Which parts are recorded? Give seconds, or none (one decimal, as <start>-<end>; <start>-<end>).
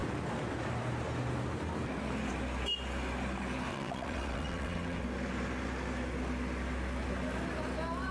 0.0-3.7; 5.0-8.1